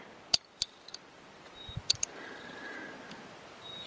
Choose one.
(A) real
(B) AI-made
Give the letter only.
A